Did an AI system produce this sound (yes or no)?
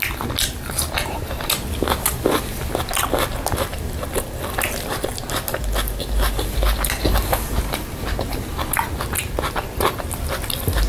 no